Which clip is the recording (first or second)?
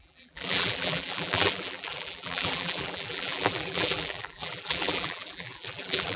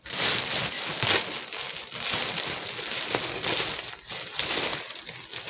second